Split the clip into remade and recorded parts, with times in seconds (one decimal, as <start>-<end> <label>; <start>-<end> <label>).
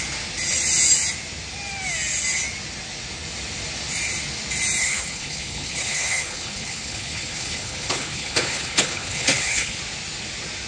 0.0-4.8 recorded; 4.8-9.8 remade; 9.8-10.7 recorded